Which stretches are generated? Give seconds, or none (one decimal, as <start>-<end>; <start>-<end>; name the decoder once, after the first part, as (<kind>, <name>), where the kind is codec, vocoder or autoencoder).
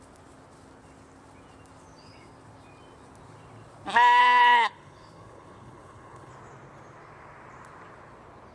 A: 4.2-6.3 (codec, HILCodec)